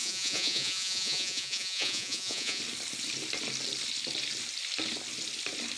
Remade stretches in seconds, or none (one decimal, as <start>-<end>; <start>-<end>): 0.0-2.6